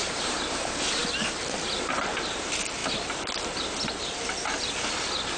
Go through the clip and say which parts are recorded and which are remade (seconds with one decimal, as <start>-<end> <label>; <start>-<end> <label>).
0.0-5.4 recorded